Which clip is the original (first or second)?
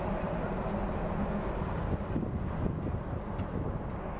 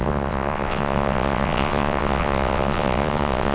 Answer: first